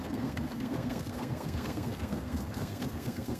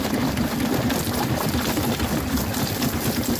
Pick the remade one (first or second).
first